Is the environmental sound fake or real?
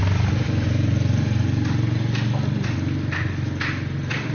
real